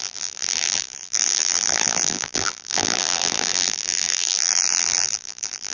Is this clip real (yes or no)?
no